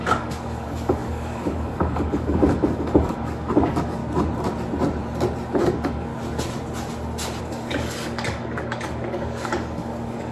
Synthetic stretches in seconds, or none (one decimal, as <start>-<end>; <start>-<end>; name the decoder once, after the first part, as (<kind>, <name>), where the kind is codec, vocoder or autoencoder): 0.0-4.0 (codec, DAC); 5.6-6.1; 7.4-10.3